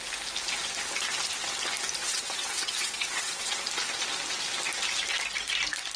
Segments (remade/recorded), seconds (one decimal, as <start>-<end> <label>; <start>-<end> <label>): 0.0-2.0 recorded; 2.0-3.5 remade; 3.5-6.0 recorded